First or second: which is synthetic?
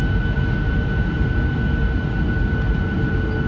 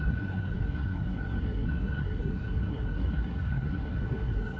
second